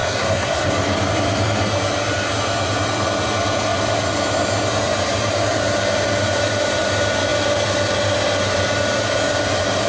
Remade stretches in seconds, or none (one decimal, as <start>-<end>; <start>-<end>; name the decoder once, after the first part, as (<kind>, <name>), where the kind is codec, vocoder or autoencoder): 0.0-0.7 (codec, SNAC)

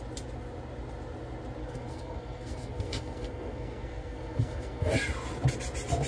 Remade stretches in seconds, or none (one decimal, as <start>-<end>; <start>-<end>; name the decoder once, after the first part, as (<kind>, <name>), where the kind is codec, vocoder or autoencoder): 1.6-4.9 (codec, SNAC)